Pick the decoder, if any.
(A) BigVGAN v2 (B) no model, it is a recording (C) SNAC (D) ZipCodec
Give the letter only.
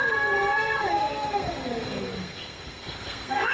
C